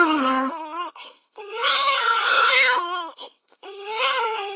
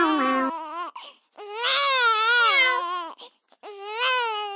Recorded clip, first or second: second